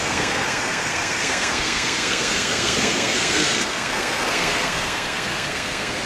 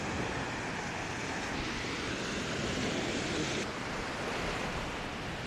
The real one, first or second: second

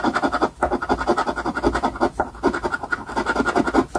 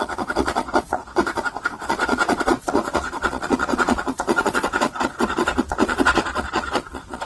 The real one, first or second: first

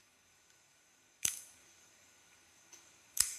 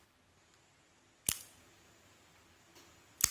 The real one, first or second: second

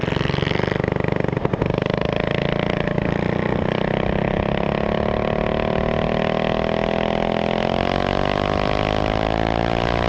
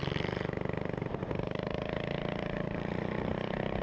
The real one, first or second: first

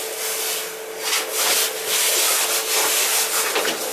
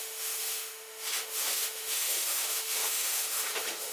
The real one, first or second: first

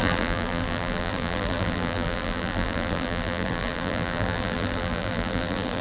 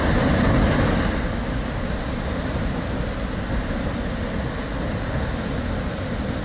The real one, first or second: second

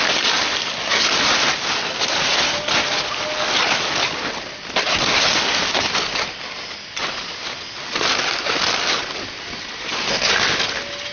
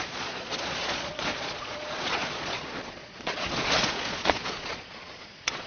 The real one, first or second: first